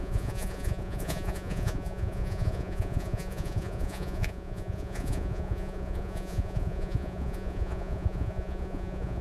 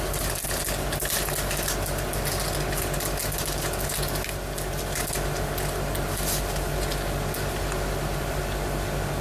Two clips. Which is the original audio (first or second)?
second